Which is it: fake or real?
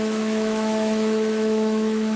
fake